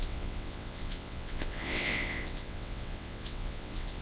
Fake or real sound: fake